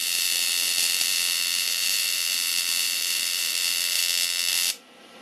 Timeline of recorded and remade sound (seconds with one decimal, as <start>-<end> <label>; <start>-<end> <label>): 0.0-4.0 remade; 4.0-4.5 recorded; 4.5-5.2 remade